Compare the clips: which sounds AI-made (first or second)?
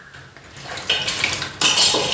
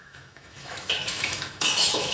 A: second